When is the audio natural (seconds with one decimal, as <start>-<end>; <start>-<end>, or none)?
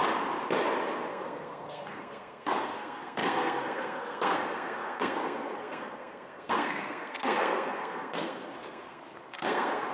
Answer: 0.0-1.1